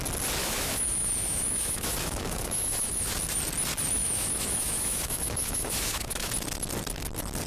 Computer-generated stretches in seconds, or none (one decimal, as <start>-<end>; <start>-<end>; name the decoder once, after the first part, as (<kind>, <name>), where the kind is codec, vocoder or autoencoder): 0.4-3.1 (autoencoder, DAC-VAE); 4.0-6.3